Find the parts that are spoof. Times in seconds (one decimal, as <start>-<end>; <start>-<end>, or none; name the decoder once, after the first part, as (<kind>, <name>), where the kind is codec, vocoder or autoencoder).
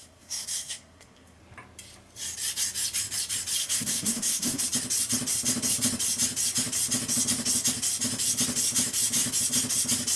0.0-1.4 (codec, SNAC); 3.6-4.6